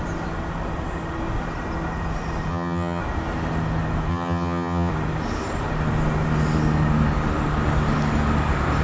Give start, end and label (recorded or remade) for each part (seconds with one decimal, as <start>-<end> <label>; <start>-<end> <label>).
0.0-2.5 recorded; 2.5-3.0 remade; 3.0-4.1 recorded; 4.1-4.9 remade; 4.9-8.8 recorded